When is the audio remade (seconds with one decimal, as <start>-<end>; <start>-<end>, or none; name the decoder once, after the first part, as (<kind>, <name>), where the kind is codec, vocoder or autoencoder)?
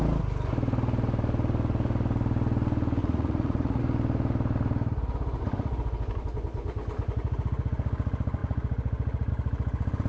3.0-3.8 (vocoder, Vocos)